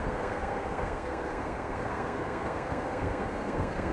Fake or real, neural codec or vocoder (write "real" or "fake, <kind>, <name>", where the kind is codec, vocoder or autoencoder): fake, codec, SNAC